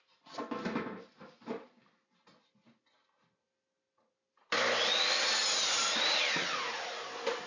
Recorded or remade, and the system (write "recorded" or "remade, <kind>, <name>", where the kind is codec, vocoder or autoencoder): recorded